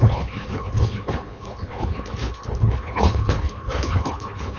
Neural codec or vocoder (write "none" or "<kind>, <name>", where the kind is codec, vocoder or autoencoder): codec, HILCodec